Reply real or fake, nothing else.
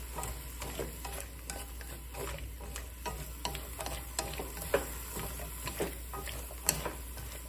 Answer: real